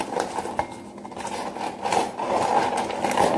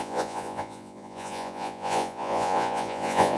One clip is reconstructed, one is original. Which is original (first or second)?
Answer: first